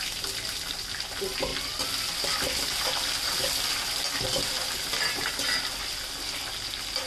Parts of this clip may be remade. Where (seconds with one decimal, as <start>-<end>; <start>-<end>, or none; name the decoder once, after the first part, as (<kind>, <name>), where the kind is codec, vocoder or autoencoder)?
none

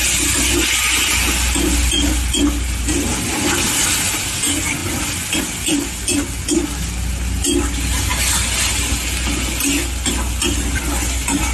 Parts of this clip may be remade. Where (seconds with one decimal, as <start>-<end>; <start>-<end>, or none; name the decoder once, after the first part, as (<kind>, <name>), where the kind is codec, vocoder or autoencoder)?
none

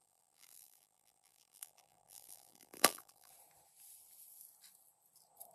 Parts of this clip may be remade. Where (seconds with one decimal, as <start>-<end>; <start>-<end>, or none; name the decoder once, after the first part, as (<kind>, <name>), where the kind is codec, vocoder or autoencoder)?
0.0-3.3 (vocoder, BigVGAN v2)

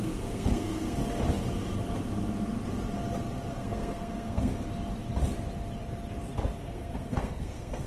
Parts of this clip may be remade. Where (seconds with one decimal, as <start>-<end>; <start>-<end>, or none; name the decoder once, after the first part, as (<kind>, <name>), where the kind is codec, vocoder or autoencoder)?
0.0-1.0 (codec, SNAC); 3.5-4.5; 6.6-7.9

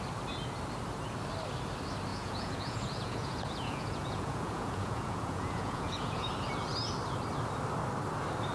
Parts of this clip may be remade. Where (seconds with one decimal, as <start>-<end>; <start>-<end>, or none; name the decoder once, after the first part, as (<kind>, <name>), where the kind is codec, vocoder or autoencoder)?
2.1-6.3 (vocoder, Vocos)

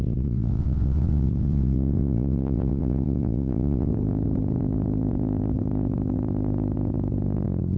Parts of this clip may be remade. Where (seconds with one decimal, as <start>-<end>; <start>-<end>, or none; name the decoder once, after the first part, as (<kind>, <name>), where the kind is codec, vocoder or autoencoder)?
0.0-3.9 (vocoder, WaveNeXt)